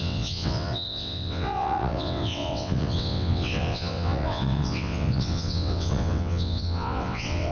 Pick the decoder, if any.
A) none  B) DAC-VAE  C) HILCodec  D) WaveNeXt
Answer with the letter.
D